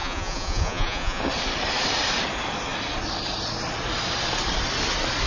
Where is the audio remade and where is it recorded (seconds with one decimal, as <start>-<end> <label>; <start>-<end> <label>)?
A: 0.0-1.2 remade; 1.2-5.3 recorded